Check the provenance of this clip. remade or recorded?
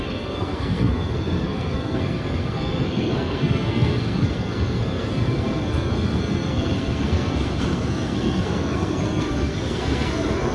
remade